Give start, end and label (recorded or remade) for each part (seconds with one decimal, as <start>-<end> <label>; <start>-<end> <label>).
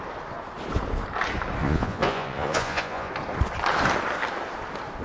0.0-1.6 recorded; 1.6-3.1 remade; 3.1-5.0 recorded